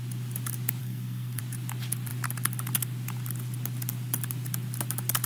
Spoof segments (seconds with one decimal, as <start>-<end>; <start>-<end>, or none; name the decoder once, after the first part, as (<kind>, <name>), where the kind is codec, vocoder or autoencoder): 0.8-1.4 (codec, SNAC)